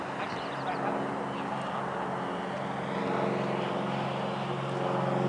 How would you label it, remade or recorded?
recorded